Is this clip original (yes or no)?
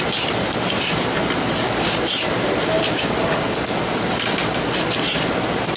yes